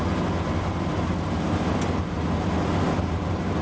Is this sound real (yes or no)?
yes